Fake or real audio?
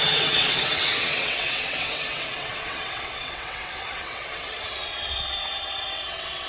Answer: fake